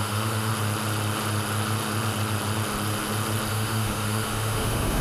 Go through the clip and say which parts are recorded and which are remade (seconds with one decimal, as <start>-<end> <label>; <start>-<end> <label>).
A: 0.0-0.5 remade; 0.5-3.5 recorded; 3.5-5.0 remade